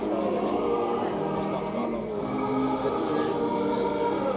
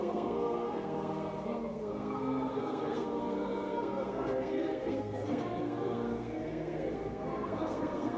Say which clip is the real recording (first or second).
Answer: first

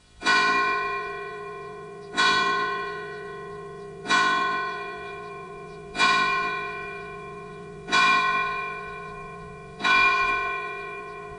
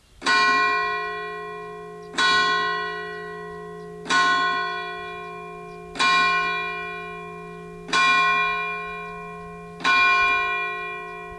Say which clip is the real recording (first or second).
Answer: second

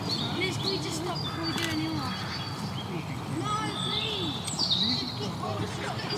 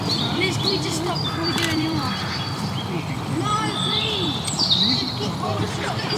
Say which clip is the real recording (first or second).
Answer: first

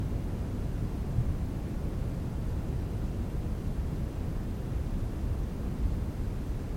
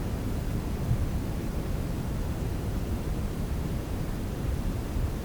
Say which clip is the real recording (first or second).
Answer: first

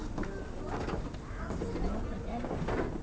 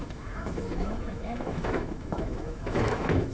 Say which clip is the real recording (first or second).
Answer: first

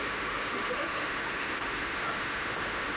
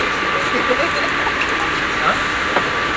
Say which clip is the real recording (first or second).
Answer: second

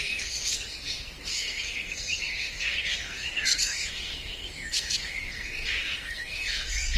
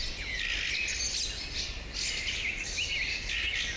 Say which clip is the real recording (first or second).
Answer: second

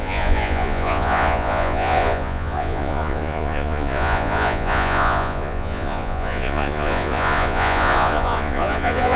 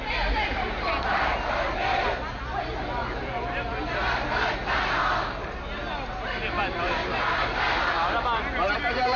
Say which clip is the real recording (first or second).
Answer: second